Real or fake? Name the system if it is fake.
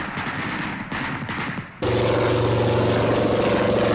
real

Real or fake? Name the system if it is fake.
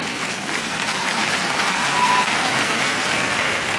fake, codec, SNAC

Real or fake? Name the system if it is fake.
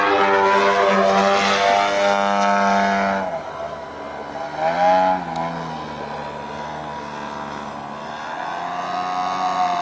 real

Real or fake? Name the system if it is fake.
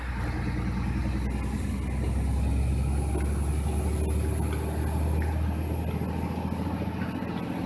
real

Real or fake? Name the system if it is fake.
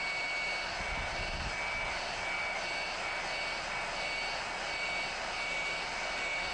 real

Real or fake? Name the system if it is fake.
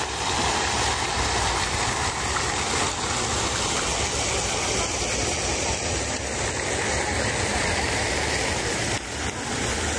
real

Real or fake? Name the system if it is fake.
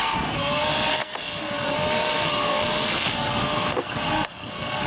fake, codec, SNAC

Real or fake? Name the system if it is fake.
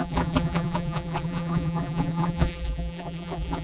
fake, vocoder, BigVGAN v2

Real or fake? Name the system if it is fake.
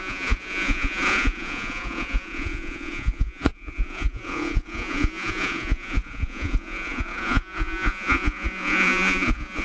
fake, vocoder, Vocos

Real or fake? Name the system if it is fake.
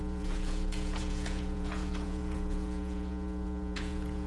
fake, vocoder, Vocos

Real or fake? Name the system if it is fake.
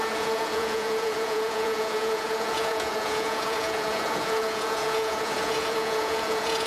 fake, vocoder, Vocos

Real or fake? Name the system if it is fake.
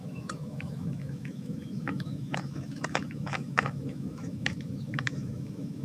fake, autoencoder, DAC-VAE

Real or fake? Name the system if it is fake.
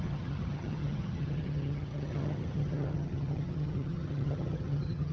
fake, vocoder, HiFi-GAN